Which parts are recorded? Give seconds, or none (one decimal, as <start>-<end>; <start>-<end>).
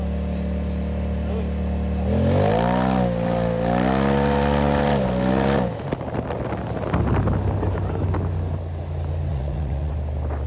0.0-9.3; 9.9-10.5